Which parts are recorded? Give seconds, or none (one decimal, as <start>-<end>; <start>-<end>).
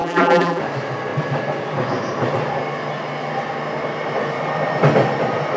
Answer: 0.6-5.6